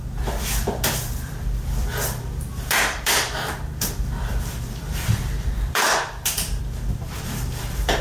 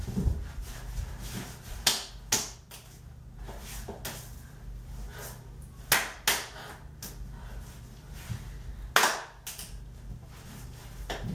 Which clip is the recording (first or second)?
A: second